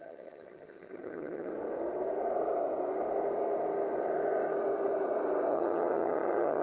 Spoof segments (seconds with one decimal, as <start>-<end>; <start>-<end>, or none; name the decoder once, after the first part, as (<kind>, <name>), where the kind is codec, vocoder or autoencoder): 0.0-1.5 (vocoder, HiFi-GAN); 5.5-6.6